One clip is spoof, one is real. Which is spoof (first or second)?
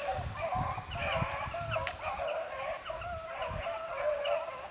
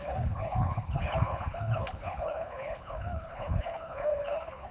second